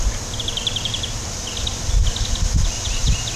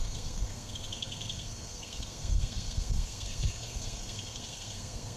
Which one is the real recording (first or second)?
first